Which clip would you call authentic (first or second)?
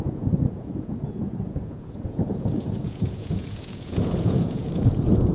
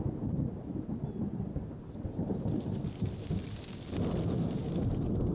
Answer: second